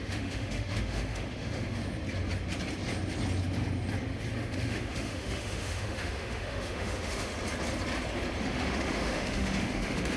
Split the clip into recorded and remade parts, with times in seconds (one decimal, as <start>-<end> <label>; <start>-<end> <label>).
0.0-1.8 remade; 1.8-4.3 recorded; 4.3-7.3 remade; 7.3-8.4 recorded; 8.4-10.2 remade